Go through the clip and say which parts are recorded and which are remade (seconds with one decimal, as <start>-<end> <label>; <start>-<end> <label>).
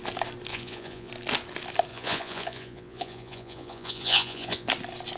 0.0-0.5 recorded; 0.5-1.1 remade; 1.1-1.9 recorded; 1.9-4.7 remade; 4.7-5.2 recorded